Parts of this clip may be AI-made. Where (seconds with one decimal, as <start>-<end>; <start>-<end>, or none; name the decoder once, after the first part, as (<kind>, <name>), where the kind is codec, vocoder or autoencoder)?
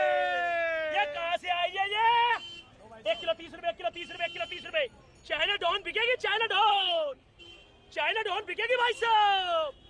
6.7-7.4 (codec, HILCodec)